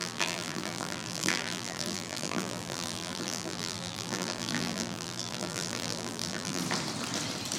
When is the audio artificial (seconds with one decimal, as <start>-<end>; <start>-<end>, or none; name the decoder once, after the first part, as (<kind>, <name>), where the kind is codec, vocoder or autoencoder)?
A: 0.0-6.6 (vocoder, BigVGAN v2)